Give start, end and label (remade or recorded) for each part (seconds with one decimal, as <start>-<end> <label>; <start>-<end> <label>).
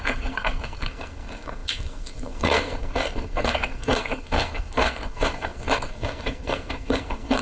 0.0-7.4 remade